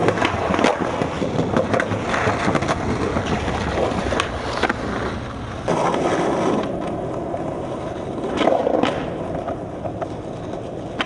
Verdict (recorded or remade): recorded